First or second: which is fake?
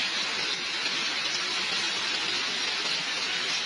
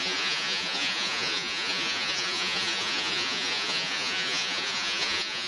second